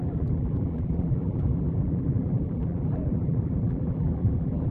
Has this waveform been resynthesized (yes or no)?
yes